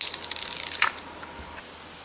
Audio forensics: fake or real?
real